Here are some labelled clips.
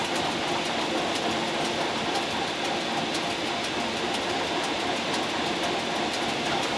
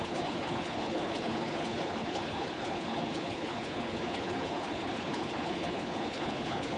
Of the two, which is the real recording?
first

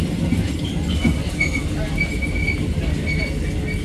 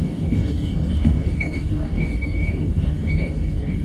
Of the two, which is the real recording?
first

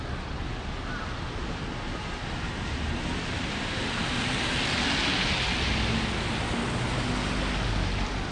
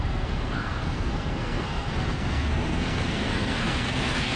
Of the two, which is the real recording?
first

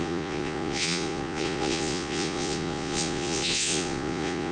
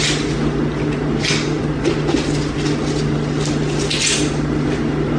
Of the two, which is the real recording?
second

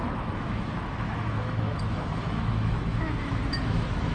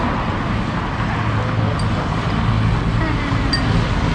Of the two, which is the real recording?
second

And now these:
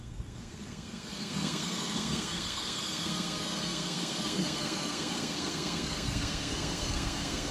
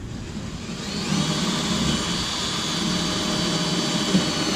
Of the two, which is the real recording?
second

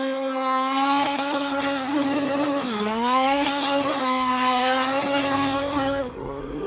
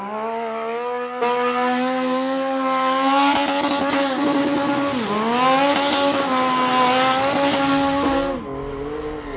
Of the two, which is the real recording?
second